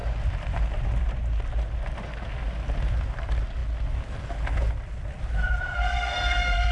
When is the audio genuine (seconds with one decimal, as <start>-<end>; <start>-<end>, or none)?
0.0-5.7